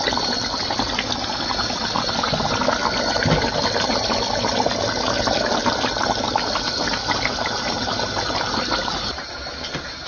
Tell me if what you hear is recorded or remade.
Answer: recorded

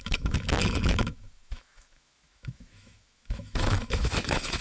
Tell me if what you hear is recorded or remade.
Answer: remade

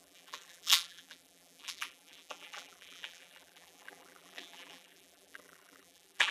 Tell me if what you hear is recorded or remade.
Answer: remade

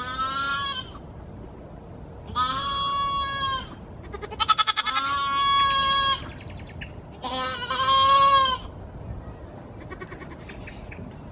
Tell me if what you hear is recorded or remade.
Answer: recorded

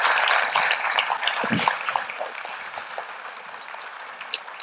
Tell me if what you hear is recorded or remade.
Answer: remade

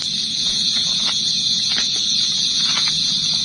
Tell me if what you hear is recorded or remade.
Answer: remade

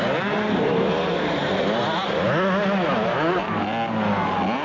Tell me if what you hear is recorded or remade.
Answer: remade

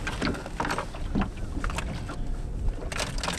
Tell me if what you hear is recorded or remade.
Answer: recorded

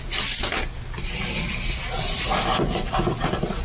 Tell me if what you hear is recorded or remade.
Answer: recorded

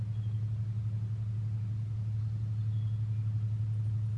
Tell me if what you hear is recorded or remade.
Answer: recorded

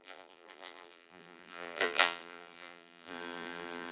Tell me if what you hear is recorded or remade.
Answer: remade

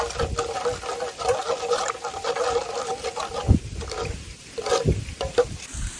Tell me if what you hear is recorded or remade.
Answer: recorded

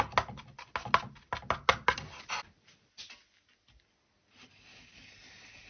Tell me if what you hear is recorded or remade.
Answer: recorded